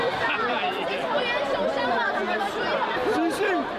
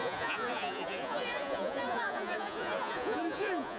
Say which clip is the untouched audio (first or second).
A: first